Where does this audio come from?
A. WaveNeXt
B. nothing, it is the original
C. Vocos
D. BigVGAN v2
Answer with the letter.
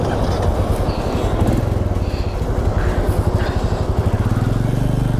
B